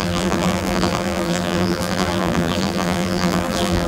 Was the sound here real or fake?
fake